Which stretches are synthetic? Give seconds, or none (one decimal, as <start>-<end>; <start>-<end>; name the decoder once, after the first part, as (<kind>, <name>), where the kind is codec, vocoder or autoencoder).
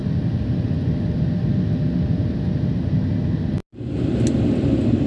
none